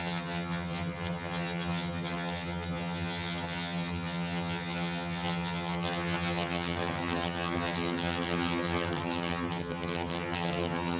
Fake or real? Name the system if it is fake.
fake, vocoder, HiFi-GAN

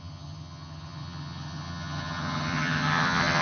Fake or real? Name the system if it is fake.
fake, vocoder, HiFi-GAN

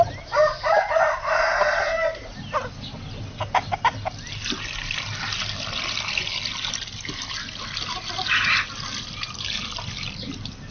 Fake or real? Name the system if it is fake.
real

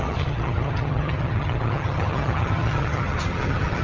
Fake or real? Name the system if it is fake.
fake, vocoder, HiFi-GAN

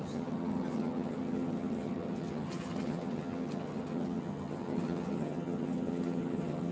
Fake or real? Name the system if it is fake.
fake, vocoder, HiFi-GAN